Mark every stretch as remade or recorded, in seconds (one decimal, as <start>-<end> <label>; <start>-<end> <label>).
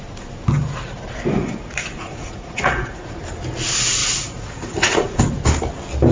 0.0-1.4 recorded; 1.4-3.2 remade; 3.2-4.0 recorded; 4.0-5.2 remade; 5.2-6.1 recorded